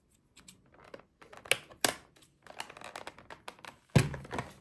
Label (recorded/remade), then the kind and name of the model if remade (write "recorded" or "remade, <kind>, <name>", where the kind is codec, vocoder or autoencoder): recorded